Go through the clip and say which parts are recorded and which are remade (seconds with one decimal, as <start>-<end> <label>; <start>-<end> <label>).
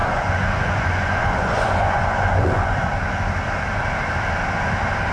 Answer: 0.0-2.8 remade; 2.8-5.1 recorded